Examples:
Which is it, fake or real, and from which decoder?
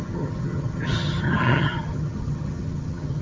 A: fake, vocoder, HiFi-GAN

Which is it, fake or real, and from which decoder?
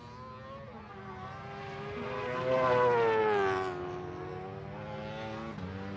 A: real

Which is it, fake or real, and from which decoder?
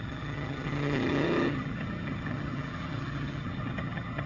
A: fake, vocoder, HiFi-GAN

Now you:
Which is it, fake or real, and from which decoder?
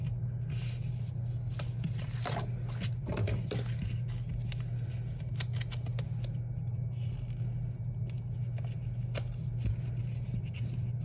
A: real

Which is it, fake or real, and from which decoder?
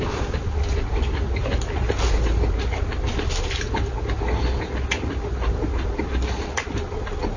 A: real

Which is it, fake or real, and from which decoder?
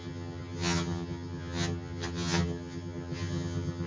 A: fake, vocoder, HiFi-GAN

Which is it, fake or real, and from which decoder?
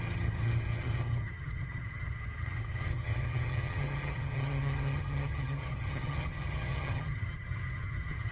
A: fake, vocoder, HiFi-GAN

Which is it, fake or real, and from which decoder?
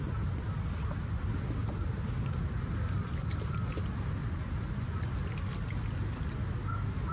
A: real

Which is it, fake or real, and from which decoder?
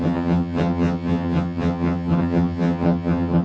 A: fake, vocoder, HiFi-GAN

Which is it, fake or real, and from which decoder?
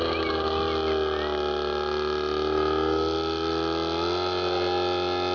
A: real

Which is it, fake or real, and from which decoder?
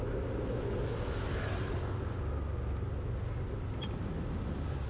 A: real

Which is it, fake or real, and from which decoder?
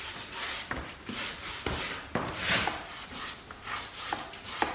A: real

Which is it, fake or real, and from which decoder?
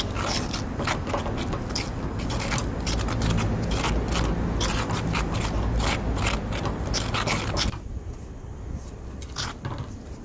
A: real